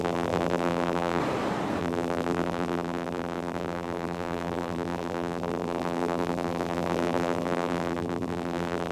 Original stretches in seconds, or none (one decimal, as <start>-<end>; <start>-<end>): 1.2-1.8